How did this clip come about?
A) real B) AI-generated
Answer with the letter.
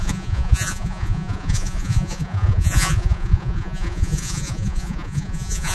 B